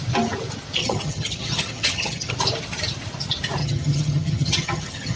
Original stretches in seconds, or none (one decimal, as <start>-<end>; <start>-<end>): 0.0-0.8; 2.3-3.6